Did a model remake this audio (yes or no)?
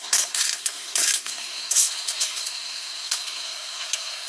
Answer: yes